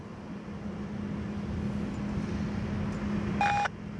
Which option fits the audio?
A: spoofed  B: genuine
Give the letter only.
B